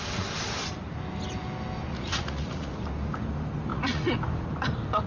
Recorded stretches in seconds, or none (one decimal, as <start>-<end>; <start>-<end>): 0.0-1.9; 2.7-3.7; 4.2-5.1

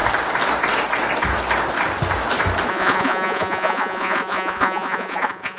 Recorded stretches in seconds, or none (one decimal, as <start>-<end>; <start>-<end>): 0.0-2.7

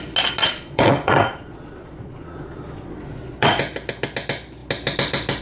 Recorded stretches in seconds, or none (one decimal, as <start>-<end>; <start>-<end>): 0.0-0.4; 3.6-5.4

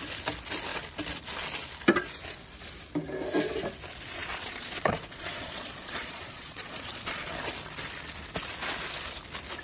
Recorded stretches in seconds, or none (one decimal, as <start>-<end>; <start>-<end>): 0.0-4.1; 7.3-9.6

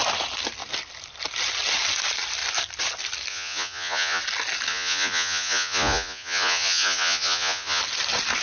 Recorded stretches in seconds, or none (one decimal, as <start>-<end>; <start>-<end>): 0.0-3.3; 4.2-4.7; 7.8-8.4

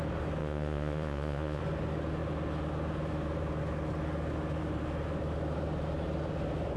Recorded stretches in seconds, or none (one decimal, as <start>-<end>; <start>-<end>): 0.0-0.4; 1.6-6.8

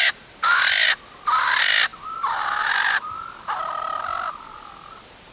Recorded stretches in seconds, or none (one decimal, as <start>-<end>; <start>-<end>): 0.0-5.3

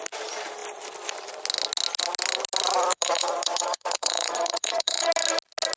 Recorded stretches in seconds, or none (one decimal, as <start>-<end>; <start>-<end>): 0.0-2.9; 5.1-5.8